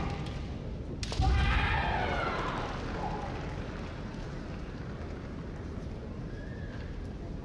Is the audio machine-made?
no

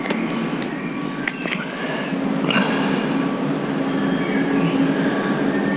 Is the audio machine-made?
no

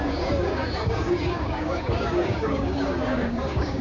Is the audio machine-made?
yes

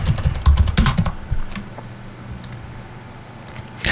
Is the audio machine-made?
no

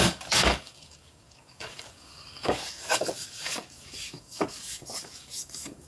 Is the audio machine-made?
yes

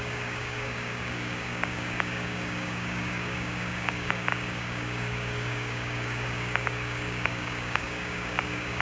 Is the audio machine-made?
yes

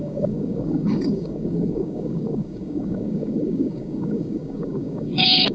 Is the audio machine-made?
yes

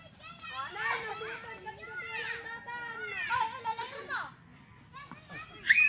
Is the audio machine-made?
no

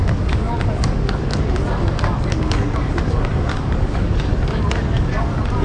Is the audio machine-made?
yes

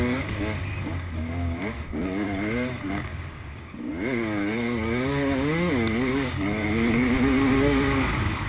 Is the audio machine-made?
yes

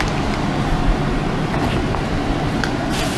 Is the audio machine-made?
no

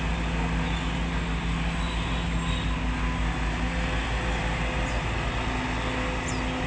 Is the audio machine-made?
no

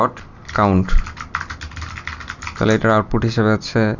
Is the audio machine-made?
no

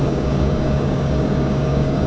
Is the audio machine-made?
yes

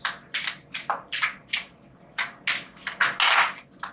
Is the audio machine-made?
no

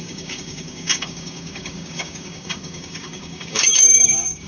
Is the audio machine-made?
yes